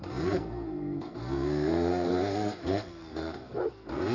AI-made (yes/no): yes